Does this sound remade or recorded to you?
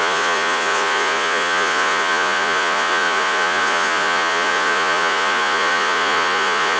remade